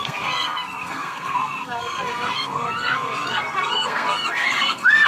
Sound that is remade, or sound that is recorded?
remade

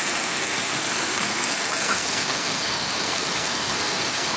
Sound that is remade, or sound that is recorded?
remade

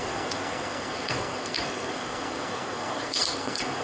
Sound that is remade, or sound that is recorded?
remade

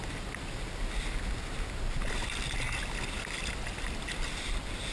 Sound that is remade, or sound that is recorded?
recorded